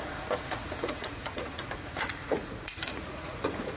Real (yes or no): no